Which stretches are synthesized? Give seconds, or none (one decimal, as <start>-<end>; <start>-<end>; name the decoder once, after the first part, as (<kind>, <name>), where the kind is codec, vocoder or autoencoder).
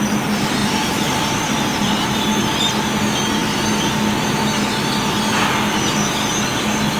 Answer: 0.6-2.4 (vocoder, BigVGAN v2)